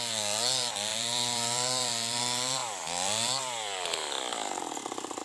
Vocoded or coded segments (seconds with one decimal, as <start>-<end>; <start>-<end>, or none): 0.0-5.2